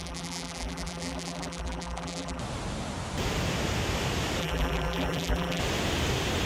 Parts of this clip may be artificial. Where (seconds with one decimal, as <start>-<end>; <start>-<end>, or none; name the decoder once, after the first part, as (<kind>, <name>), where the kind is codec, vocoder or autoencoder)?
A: 0.0-2.4 (vocoder, BigVGAN v2); 4.4-5.6